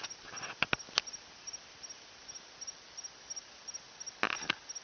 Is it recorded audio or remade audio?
recorded